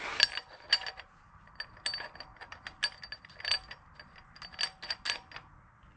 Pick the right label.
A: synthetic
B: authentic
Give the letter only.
B